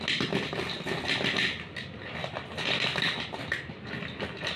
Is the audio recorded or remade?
recorded